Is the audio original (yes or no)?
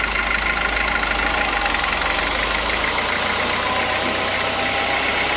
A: yes